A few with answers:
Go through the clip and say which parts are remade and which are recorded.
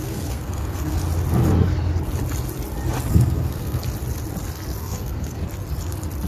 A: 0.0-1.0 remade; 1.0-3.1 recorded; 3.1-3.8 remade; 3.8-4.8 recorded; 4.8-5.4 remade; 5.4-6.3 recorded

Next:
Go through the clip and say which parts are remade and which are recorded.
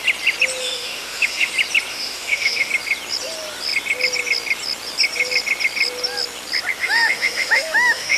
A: 0.0-0.6 recorded; 0.6-1.5 remade; 1.5-1.9 recorded; 1.9-2.7 remade; 2.7-6.8 recorded; 6.8-8.2 remade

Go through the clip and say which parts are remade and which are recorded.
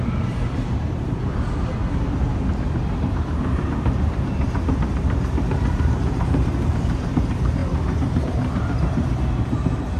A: 0.0-1.8 remade; 1.8-2.7 recorded; 2.7-10.0 remade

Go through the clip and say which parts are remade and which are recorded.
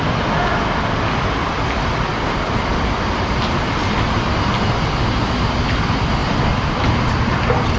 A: 0.0-2.1 recorded; 2.1-3.4 remade; 3.4-6.2 recorded; 6.2-6.9 remade; 6.9-7.8 recorded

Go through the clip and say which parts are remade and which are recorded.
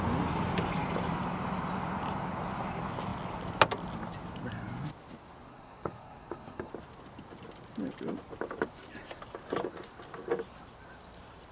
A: 0.0-5.5 recorded; 5.5-6.7 remade; 6.7-11.5 recorded